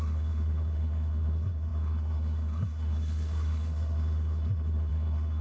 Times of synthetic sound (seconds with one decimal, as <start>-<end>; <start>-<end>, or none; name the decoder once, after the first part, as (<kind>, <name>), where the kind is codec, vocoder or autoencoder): 0.0-5.4 (codec, SNAC)